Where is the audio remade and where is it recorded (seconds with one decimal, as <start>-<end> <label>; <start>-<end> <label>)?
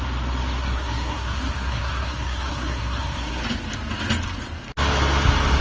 0.0-0.6 recorded; 0.6-3.4 remade; 3.4-5.6 recorded